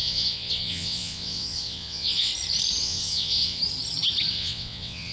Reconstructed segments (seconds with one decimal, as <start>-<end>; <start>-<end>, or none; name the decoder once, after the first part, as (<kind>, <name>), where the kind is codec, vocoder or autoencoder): 0.0-2.3 (vocoder, WaveNeXt); 2.8-3.6; 4.3-5.1